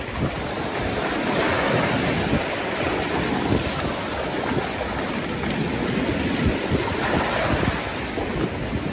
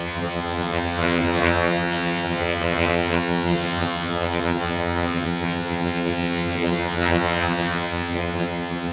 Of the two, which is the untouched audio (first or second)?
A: first